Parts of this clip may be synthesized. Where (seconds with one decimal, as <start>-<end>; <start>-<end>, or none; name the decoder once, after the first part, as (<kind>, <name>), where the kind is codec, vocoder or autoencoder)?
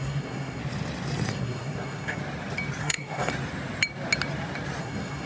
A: 0.0-0.6 (codec, SNAC); 1.3-2.2; 2.8-3.3; 4.8-5.3